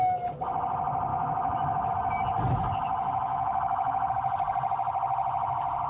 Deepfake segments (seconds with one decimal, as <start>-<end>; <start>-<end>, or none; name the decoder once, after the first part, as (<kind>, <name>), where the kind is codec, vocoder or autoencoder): 1.1-1.9 (autoencoder, DAC-VAE); 3.3-4.1